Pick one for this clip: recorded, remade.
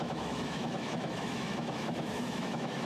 remade